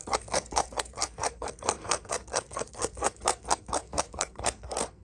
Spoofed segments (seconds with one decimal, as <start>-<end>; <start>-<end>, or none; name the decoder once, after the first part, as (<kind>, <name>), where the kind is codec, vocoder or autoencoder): 0.0-5.0 (codec, SNAC)